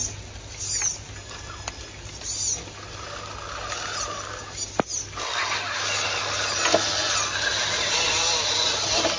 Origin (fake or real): real